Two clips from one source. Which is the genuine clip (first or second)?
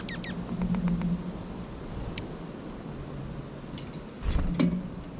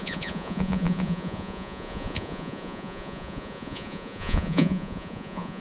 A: first